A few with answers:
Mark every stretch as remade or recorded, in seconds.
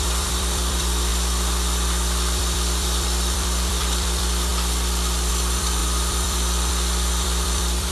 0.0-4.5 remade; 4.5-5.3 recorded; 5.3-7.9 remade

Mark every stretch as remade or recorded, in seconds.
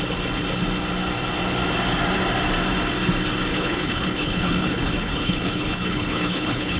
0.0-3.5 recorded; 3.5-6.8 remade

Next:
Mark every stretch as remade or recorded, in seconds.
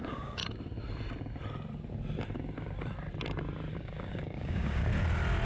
0.0-0.4 remade; 0.4-3.7 recorded; 3.7-4.8 remade; 4.8-5.5 recorded